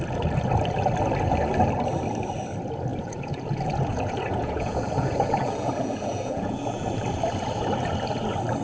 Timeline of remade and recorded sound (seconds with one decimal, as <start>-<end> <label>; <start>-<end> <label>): 0.0-2.9 recorded; 2.9-6.9 remade; 6.9-8.6 recorded